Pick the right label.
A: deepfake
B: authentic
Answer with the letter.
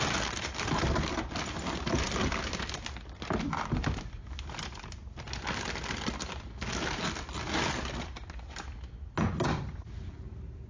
B